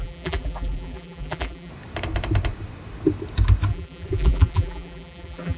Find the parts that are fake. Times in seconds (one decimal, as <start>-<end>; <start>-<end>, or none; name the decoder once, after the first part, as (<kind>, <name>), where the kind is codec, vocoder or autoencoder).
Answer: 0.0-1.7 (vocoder, BigVGAN v2); 3.7-5.6